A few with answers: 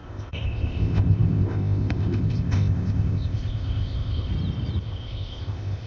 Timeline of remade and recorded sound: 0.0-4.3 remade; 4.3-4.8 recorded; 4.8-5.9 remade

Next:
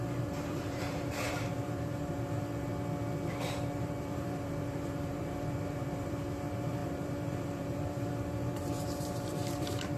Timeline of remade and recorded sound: 0.0-2.7 remade; 2.7-3.3 recorded; 3.3-10.0 remade

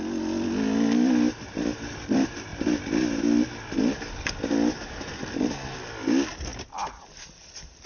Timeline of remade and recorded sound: 0.0-7.9 recorded

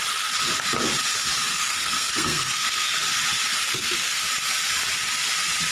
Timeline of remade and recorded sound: 0.0-1.5 recorded; 1.5-2.9 remade; 2.9-3.7 recorded; 3.7-4.2 remade; 4.2-5.7 recorded

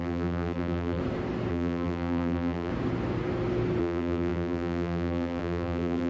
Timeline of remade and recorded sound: 0.0-1.0 remade; 1.0-1.5 recorded; 1.5-2.7 remade; 2.7-3.8 recorded; 3.8-6.1 remade

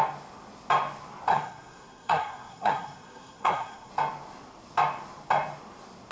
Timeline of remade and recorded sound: 0.0-1.3 recorded; 1.3-3.9 remade; 3.9-6.1 recorded

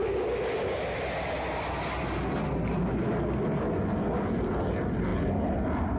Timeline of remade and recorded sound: 0.0-6.0 recorded